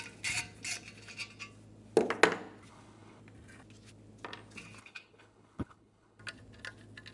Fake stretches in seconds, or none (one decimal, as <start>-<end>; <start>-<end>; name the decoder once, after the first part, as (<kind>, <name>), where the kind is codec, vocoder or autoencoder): 2.7-3.2 (codec, HILCodec); 4.8-6.2